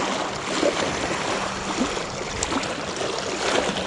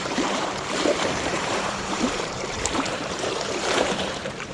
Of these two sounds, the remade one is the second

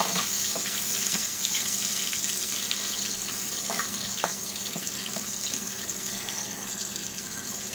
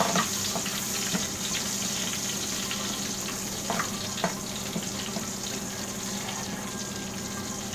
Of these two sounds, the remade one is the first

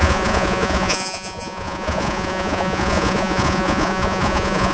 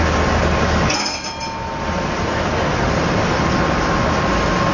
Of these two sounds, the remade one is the first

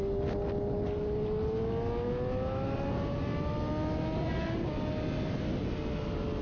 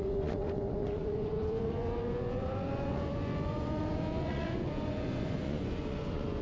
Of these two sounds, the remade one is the second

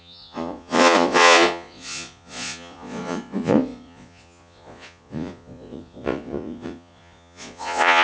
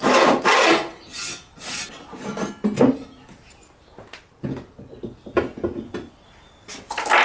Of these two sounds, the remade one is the first